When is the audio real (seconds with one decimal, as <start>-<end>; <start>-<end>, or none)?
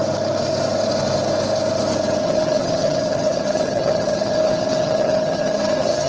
0.0-2.2